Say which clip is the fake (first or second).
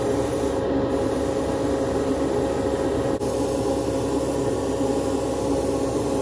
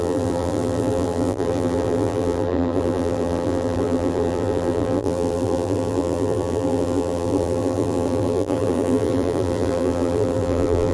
second